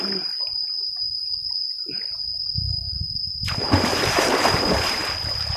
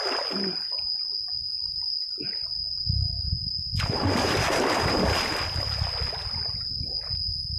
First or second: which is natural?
second